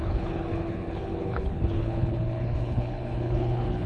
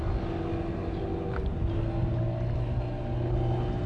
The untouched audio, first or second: second